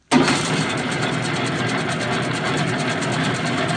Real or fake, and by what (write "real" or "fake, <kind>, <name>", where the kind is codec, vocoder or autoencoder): real